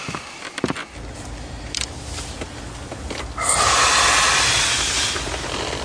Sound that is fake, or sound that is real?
real